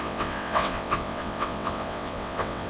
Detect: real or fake fake